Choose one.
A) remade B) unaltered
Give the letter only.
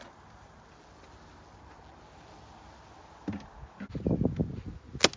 B